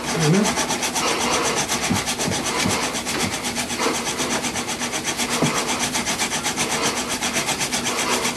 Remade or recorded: recorded